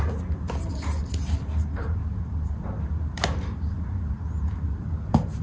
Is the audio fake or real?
real